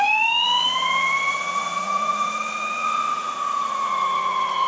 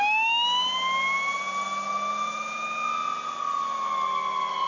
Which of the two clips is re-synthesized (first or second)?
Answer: first